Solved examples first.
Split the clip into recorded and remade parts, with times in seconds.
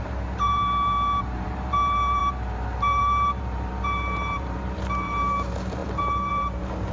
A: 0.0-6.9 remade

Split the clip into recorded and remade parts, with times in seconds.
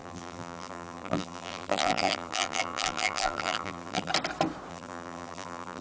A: 0.0-4.1 remade; 4.1-4.7 recorded; 4.7-5.8 remade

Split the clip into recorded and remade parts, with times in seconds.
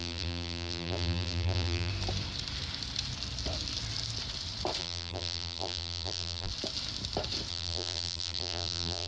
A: 0.0-1.9 remade; 1.9-4.8 recorded; 4.8-6.5 remade; 6.5-7.5 recorded; 7.5-9.1 remade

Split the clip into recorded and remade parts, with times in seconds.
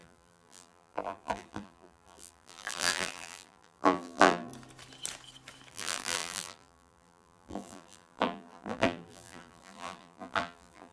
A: 0.0-4.5 remade; 4.5-5.7 recorded; 5.7-10.9 remade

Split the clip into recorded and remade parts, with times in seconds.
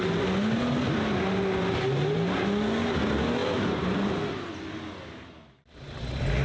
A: 0.0-3.4 recorded; 3.4-4.5 remade; 4.5-6.4 recorded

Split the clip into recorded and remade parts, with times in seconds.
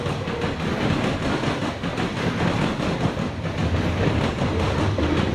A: 0.0-5.3 recorded